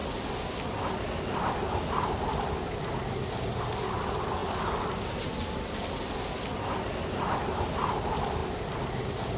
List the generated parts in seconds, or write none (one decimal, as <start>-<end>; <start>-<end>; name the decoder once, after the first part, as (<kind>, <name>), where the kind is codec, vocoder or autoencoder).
none

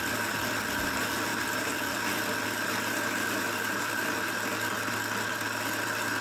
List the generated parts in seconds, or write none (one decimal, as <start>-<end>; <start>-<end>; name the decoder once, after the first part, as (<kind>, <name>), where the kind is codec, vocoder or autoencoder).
1.3-4.3 (vocoder, BigVGAN v2)